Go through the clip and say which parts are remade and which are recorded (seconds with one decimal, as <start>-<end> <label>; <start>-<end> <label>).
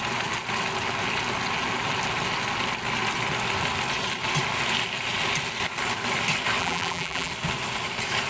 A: 0.0-6.6 recorded; 6.6-7.3 remade; 7.3-8.3 recorded